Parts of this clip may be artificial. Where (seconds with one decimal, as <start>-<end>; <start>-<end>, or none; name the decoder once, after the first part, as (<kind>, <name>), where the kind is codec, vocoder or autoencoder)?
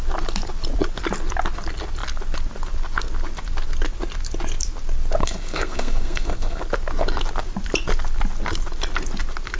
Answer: 5.2-6.6 (codec, SNAC)